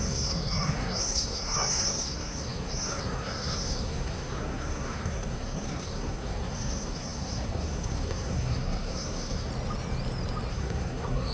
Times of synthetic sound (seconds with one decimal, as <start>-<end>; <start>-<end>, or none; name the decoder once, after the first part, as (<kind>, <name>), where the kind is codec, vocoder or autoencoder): 0.0-9.5 (codec, SNAC); 10.5-11.3